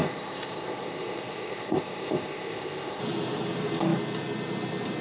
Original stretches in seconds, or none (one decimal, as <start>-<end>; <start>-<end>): 3.0-5.0